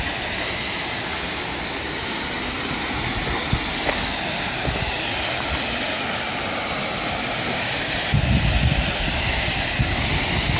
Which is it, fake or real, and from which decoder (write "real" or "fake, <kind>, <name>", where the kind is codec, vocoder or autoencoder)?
real